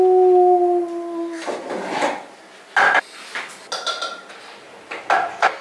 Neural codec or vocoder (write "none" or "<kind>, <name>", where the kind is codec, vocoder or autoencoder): none